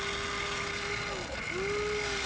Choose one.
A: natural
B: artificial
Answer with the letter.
A